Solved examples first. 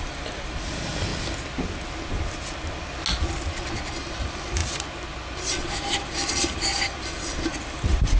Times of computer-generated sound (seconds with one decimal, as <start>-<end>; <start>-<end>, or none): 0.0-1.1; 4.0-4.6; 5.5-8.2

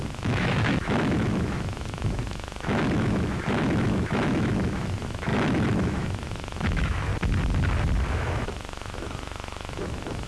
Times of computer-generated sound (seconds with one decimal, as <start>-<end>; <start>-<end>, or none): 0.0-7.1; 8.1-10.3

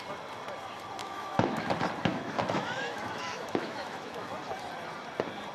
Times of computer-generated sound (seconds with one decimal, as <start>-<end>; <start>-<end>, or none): 1.0-1.7; 2.1-4.3

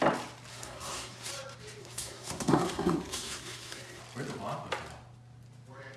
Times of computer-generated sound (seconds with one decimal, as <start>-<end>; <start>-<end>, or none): 0.5-1.3; 1.8-4.0

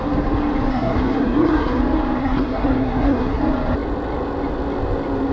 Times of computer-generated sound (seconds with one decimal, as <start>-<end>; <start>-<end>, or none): 0.7-1.8; 2.2-3.4

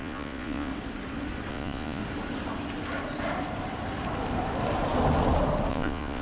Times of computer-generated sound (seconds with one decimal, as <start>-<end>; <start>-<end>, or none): 0.0-0.7; 1.5-2.0; 5.7-6.2